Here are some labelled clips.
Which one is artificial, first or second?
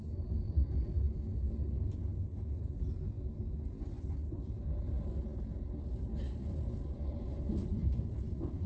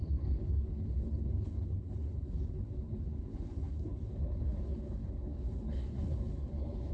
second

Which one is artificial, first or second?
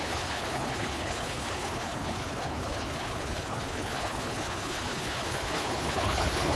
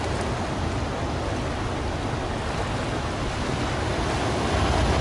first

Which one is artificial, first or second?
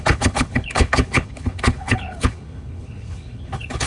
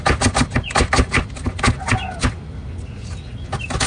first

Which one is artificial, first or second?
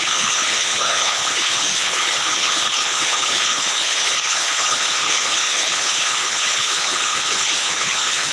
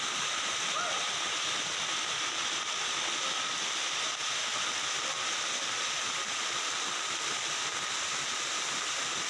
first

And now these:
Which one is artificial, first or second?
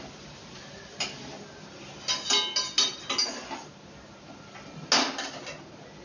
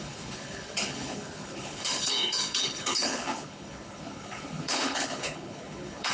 second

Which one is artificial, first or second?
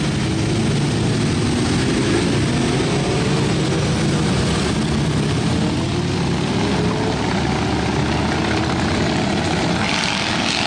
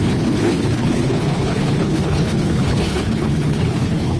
second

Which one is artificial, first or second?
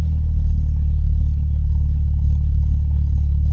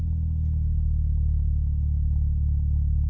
first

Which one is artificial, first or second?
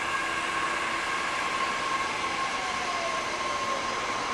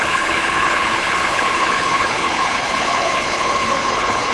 second